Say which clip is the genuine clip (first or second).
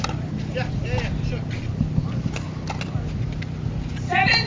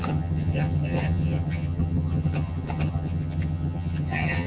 first